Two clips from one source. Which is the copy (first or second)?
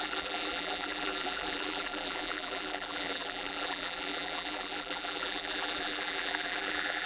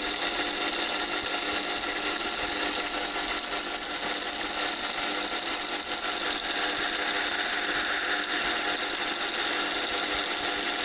first